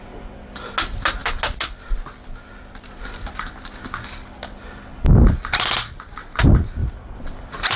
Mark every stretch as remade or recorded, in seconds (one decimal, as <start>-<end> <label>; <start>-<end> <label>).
0.0-6.8 recorded; 6.8-7.8 remade